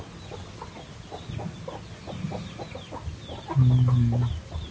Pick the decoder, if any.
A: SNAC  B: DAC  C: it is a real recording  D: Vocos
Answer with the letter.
C